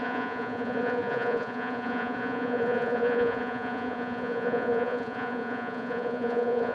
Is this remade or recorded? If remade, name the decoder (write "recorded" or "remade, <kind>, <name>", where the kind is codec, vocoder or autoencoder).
remade, vocoder, Vocos